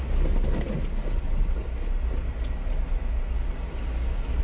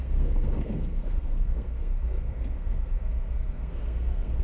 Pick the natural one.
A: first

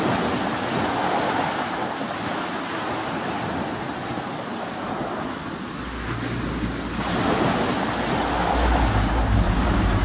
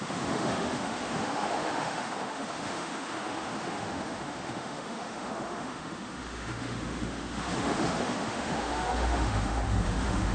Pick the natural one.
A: first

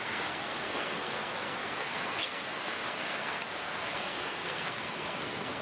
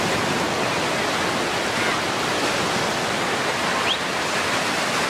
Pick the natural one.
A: second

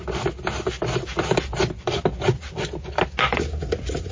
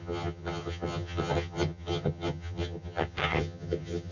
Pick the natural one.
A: first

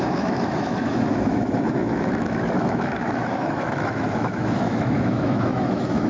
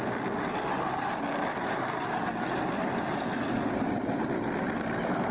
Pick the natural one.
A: second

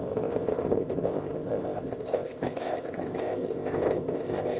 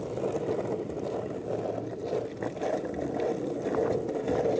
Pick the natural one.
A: second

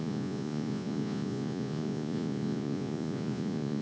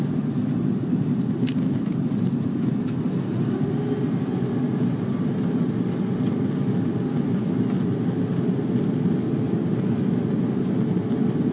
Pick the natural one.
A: second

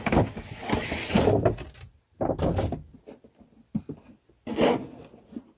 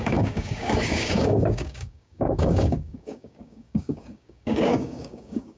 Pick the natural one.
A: first